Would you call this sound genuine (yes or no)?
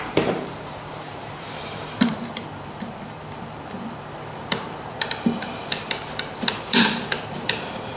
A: no